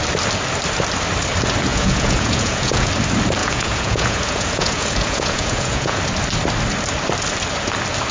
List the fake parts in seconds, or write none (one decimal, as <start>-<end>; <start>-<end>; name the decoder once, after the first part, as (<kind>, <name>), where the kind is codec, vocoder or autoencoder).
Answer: 1.7-2.9 (vocoder, Vocos); 3.4-6.0